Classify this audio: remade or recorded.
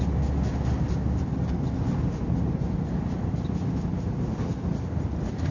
recorded